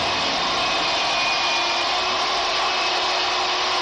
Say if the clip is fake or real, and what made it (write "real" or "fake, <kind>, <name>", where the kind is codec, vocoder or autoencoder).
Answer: real